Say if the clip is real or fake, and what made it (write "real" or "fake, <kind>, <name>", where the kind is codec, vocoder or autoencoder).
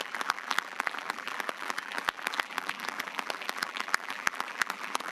fake, vocoder, BigVGAN v2